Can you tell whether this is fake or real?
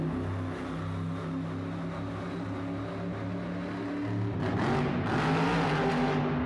real